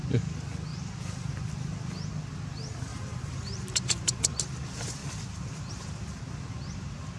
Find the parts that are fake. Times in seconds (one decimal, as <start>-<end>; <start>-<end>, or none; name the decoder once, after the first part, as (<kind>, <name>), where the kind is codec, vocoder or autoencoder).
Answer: 0.7-1.3 (vocoder, BigVGAN v2); 2.9-4.4